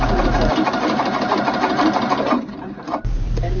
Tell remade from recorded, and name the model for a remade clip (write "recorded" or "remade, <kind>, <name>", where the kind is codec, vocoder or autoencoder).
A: remade, vocoder, BigVGAN v2